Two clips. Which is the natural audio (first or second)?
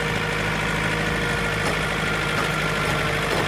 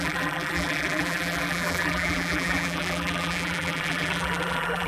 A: first